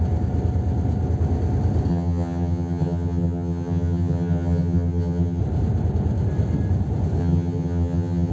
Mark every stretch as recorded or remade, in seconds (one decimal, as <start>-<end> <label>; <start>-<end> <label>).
0.0-1.9 recorded; 1.9-5.4 remade; 5.4-7.2 recorded; 7.2-8.3 remade